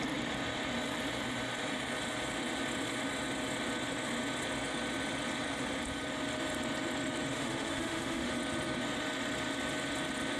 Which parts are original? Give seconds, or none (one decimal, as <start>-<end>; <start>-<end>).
0.0-7.3; 8.3-10.4